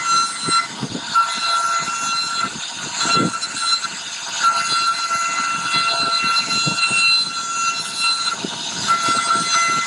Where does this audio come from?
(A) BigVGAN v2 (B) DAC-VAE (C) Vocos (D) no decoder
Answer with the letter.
D